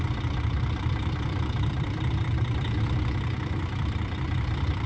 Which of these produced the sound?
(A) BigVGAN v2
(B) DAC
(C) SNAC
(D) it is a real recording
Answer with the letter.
A